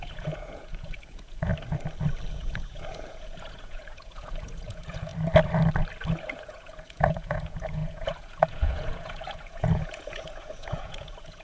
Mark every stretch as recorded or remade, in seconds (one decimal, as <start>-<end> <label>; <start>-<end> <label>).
0.0-1.5 remade; 1.5-2.3 recorded; 2.3-5.1 remade; 5.1-6.1 recorded; 6.1-11.4 remade